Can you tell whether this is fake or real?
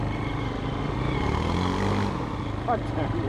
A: real